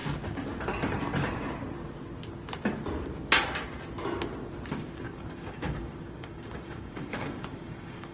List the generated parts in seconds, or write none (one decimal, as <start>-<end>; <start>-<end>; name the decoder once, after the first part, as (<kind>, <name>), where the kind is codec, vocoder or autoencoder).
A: 4.7-8.1 (codec, DAC)